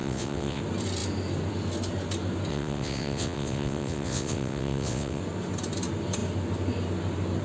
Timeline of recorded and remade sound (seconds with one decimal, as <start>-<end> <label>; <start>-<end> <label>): 0.0-0.6 remade; 0.6-2.5 recorded; 2.5-5.2 remade; 5.2-7.4 recorded